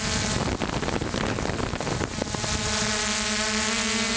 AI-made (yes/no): no